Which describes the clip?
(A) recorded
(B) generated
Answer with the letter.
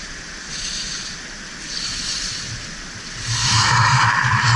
B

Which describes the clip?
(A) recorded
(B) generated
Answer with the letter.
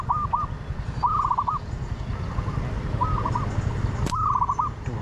A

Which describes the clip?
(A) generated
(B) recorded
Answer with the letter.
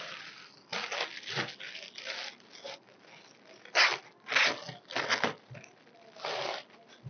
B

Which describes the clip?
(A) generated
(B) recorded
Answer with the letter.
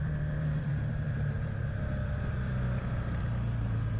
A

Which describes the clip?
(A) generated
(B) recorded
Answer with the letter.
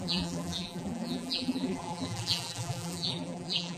A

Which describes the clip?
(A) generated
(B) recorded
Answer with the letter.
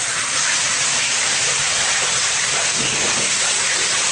A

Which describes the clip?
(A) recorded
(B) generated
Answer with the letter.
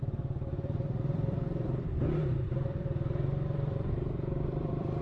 B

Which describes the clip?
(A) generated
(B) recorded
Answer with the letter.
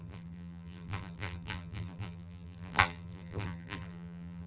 A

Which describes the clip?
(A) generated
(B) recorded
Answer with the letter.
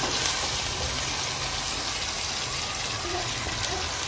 B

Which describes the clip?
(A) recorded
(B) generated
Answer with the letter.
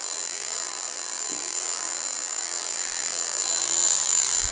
B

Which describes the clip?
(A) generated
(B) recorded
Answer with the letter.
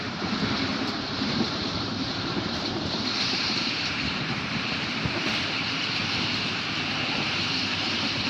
A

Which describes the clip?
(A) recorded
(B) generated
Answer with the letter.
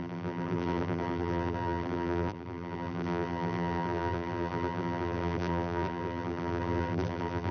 B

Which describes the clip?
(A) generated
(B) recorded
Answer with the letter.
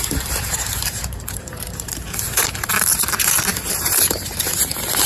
A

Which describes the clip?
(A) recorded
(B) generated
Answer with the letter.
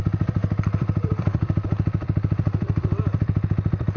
B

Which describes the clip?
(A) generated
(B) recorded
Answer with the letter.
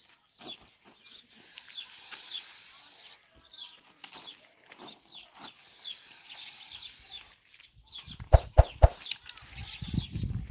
B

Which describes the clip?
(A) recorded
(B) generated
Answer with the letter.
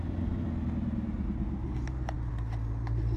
A